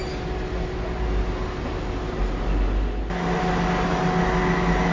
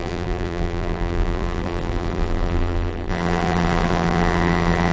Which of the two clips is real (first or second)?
first